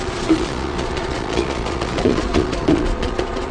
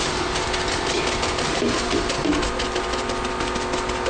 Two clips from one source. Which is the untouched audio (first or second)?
second